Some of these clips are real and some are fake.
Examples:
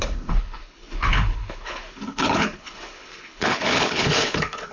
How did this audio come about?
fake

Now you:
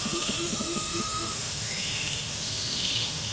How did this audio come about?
fake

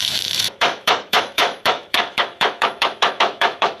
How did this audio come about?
fake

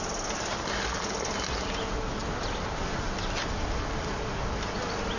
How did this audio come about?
real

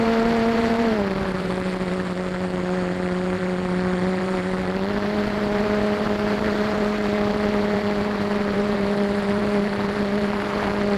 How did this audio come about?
fake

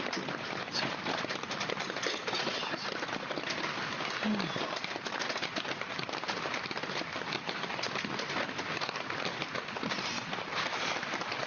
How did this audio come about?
real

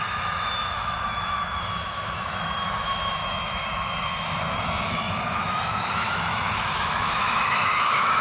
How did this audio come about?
fake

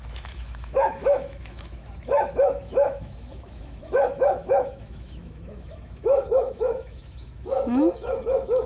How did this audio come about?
fake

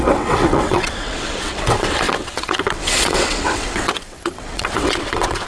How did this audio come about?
fake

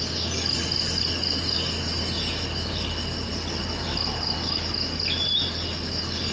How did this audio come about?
real